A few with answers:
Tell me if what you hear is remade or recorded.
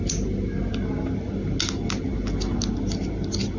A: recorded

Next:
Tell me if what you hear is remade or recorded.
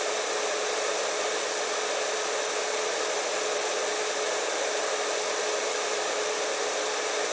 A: recorded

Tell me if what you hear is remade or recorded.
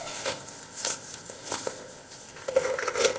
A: remade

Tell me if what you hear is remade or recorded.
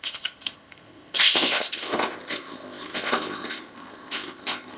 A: remade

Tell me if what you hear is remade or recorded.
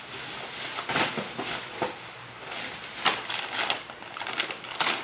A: recorded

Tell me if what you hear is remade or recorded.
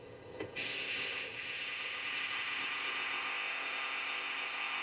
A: remade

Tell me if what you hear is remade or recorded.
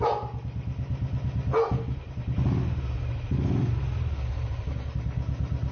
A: recorded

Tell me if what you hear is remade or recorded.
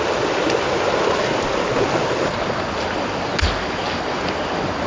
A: recorded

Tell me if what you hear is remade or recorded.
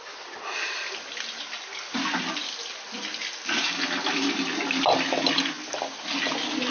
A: recorded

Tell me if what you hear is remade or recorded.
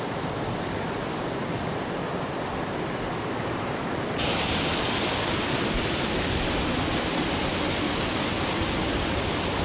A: recorded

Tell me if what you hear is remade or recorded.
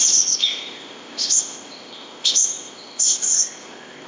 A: remade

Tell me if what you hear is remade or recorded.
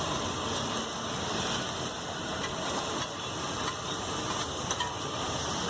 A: recorded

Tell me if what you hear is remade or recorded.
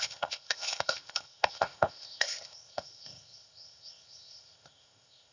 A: remade